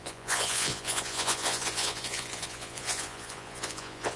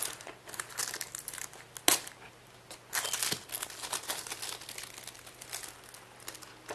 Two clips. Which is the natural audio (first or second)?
second